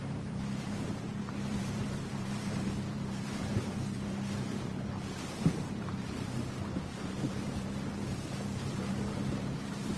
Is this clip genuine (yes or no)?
no